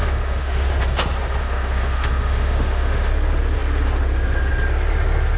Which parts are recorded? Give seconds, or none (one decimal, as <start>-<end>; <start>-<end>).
0.7-1.4; 3.1-5.4